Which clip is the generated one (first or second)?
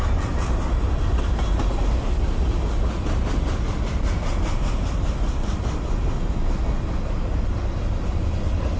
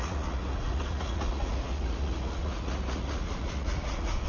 second